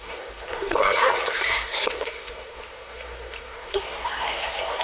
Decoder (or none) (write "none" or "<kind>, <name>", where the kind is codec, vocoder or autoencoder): codec, SNAC